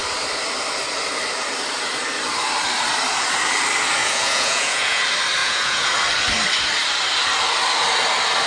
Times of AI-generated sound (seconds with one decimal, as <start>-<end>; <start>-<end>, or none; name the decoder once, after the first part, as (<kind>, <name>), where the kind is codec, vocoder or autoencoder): 4.0-5.0 (vocoder, Vocos); 5.4-5.9